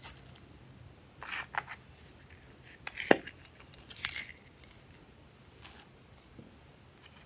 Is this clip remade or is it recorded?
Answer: recorded